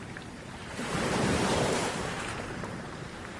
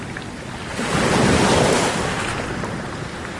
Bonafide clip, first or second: second